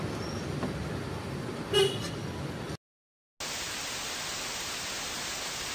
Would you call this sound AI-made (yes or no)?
no